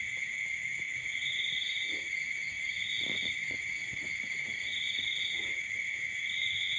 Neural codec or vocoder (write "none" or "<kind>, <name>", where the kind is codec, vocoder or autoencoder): vocoder, Vocos